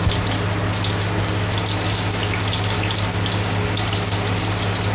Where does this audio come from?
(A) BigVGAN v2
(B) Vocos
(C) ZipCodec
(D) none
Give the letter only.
D